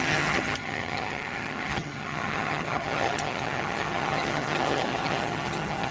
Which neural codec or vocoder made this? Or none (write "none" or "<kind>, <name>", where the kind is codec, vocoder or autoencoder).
vocoder, HiFi-GAN